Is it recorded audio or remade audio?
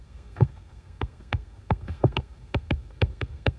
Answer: remade